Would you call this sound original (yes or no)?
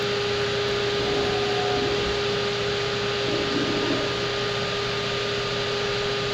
yes